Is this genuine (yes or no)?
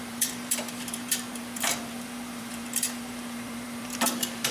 no